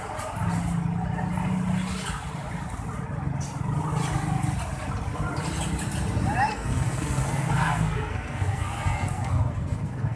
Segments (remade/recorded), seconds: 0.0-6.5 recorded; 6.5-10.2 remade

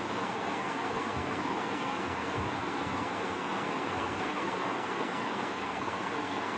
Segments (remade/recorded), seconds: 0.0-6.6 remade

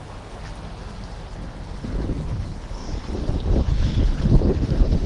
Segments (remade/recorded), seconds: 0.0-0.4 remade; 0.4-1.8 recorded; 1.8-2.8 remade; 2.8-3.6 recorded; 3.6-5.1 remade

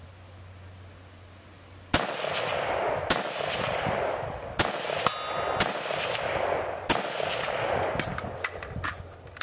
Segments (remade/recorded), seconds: 0.0-9.4 recorded

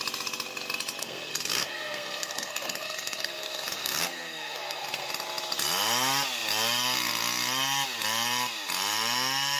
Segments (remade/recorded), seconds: 0.0-1.0 recorded; 1.0-5.1 remade; 5.1-9.6 recorded

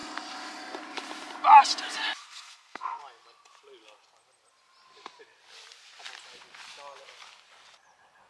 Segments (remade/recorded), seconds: 0.0-2.2 recorded; 2.2-3.0 remade; 3.0-8.3 recorded

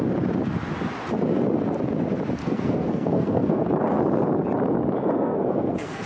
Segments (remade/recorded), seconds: 0.0-2.4 recorded; 2.4-3.7 remade; 3.7-5.0 recorded; 5.0-6.1 remade

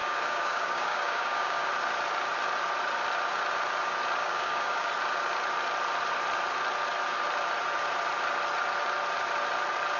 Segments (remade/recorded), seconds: 0.0-1.7 remade; 1.7-4.2 recorded; 4.2-4.9 remade; 4.9-10.0 recorded